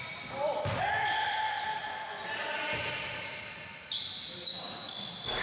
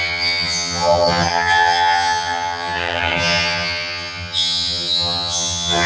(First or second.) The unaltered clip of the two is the first